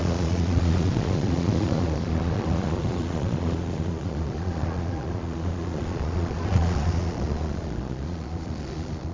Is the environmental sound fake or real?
fake